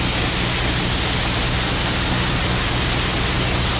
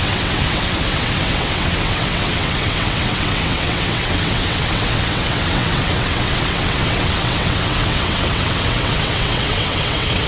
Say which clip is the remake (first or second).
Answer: second